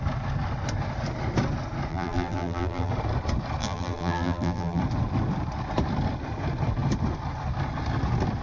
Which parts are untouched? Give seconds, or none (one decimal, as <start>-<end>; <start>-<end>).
0.0-1.9; 2.9-3.6; 4.8-8.4